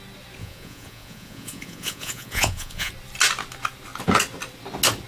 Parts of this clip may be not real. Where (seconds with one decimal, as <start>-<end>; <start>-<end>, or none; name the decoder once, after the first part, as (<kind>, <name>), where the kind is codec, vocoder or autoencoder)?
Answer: 0.4-2.9 (vocoder, Vocos)